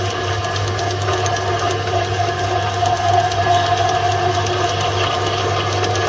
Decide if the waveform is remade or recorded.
recorded